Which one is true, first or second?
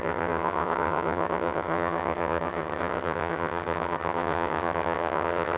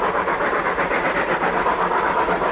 second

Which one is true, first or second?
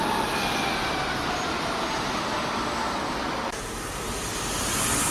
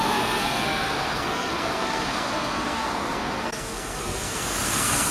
first